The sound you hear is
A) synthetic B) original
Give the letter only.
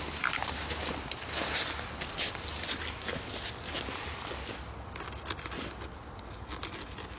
B